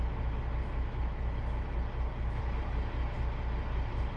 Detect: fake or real real